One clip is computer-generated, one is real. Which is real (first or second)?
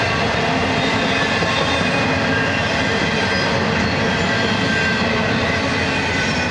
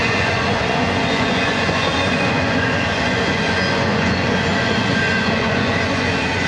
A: first